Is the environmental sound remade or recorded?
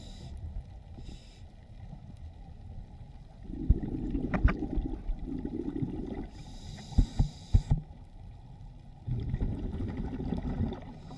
recorded